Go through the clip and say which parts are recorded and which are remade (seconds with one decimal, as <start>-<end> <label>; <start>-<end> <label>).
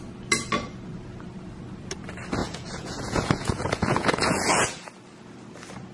0.0-2.4 recorded; 2.4-4.9 remade; 4.9-5.9 recorded